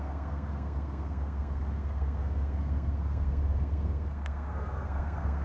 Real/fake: fake